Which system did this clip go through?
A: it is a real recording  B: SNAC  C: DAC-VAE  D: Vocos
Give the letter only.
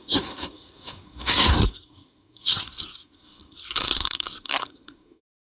B